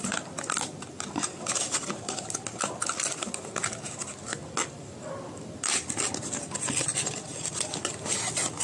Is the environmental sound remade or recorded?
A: recorded